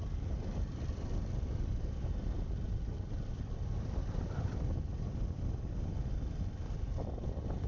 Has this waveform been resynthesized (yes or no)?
yes